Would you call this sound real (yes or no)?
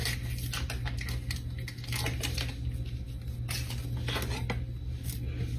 yes